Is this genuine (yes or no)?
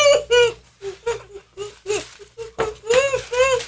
yes